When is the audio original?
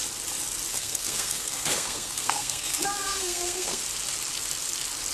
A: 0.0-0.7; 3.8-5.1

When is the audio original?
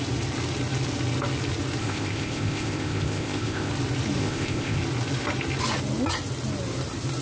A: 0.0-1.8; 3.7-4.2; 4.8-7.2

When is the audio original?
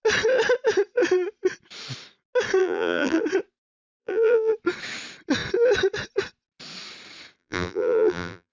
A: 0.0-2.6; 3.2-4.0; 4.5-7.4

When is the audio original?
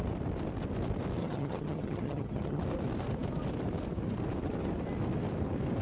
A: 0.0-1.2; 2.6-5.8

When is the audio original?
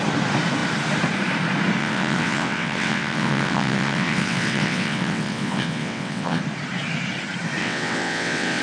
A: 0.0-1.8; 6.4-7.6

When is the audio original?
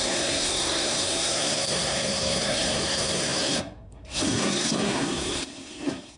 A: none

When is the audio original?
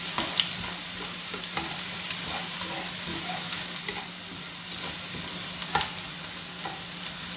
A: 0.0-3.1; 3.6-7.4